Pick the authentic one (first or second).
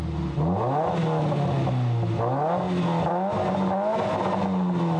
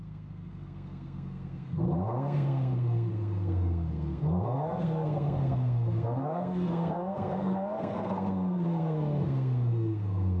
first